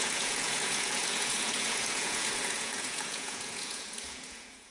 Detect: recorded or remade remade